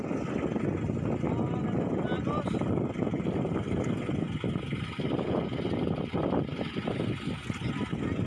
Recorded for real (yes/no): yes